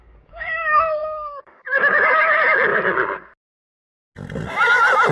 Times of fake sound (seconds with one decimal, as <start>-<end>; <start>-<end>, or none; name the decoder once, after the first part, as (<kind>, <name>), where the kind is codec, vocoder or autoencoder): 0.0-2.7 (codec, DAC)